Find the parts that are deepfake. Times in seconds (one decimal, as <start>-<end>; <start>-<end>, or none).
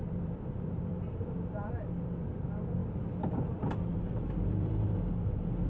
0.0-1.7; 2.8-5.0